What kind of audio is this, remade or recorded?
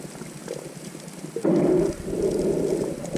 recorded